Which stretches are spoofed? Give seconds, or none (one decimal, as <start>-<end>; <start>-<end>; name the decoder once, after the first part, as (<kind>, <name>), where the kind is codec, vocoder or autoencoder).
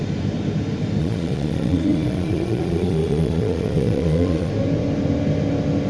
1.0-4.5 (vocoder, Vocos)